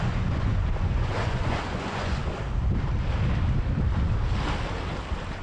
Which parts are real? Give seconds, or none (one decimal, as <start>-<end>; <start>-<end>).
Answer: 2.2-5.4